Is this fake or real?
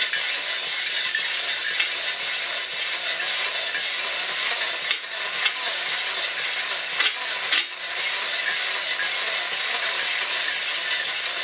real